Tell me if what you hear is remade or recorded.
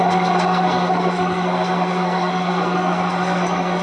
remade